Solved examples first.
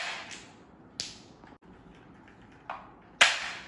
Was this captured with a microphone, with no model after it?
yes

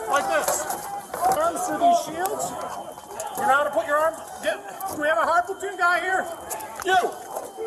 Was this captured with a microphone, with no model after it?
yes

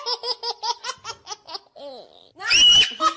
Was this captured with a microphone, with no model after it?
yes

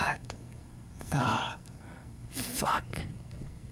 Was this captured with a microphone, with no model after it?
no